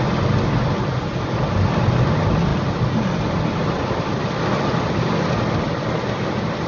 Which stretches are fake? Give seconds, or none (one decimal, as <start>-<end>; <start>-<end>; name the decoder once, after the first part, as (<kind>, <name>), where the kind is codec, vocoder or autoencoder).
2.5-4.4 (vocoder, BigVGAN v2)